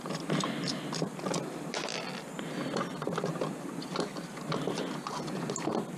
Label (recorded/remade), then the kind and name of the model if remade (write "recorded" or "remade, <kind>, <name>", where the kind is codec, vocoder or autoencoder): recorded